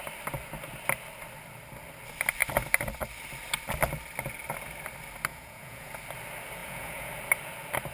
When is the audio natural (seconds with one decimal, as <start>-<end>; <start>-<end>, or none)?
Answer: 0.0-5.3; 5.9-6.6; 7.1-7.9